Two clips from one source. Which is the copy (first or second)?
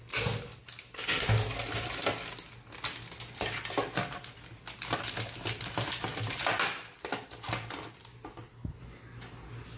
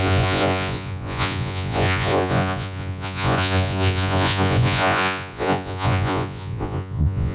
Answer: second